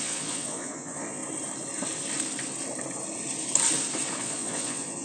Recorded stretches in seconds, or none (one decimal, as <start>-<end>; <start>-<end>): 1.2-4.2